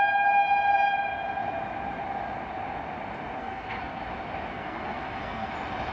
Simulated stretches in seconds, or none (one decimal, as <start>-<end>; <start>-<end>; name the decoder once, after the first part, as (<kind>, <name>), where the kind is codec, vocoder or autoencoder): 3.4-4.0 (codec, SNAC); 4.5-5.5